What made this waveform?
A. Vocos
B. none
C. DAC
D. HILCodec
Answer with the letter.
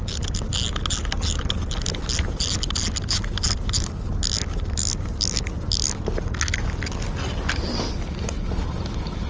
B